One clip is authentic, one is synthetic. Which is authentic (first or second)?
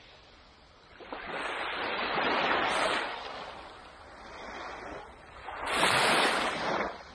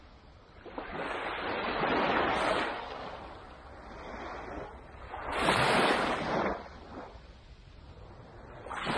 second